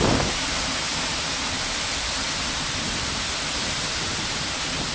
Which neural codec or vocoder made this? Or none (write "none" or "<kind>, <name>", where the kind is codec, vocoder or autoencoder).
none